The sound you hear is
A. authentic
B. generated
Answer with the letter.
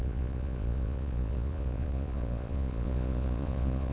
B